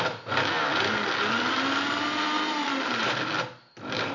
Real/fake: real